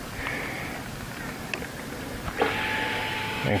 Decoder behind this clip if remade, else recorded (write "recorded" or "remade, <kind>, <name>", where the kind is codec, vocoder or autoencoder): recorded